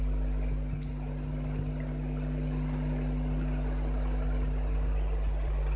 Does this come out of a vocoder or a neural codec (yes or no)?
no